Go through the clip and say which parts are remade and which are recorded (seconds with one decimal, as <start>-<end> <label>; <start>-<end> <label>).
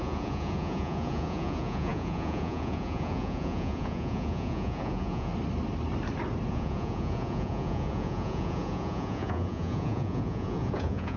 0.0-5.3 remade; 5.3-6.5 recorded; 6.5-11.2 remade